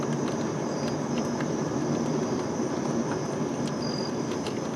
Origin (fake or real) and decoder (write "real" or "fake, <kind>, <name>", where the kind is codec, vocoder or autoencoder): real